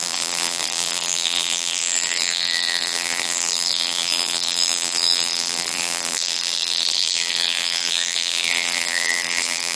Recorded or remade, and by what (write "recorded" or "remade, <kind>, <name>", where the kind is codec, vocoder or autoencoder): remade, vocoder, BigVGAN v2